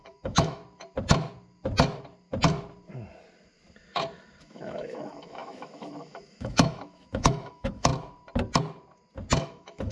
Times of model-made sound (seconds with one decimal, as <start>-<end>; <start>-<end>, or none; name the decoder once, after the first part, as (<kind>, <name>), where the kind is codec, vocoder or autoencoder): 0.0-0.6 (autoencoder, DAC-VAE); 4.4-7.9; 9.4-9.9